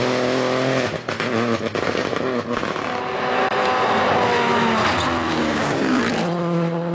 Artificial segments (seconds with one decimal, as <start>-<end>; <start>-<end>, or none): 5.3-6.0